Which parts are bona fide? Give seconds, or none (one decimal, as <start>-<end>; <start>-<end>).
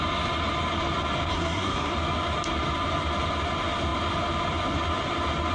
0.0-1.3; 1.9-5.5